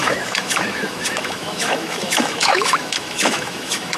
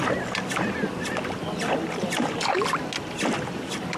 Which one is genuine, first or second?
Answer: second